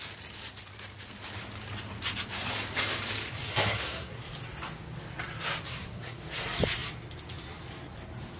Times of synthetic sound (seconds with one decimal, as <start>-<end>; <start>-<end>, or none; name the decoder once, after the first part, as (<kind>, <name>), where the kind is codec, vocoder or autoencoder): 3.5-4.2 (codec, SNAC); 5.7-6.2